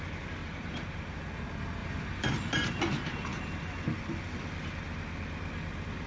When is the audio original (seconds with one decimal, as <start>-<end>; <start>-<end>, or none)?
0.0-0.4; 1.2-1.8; 2.8-6.1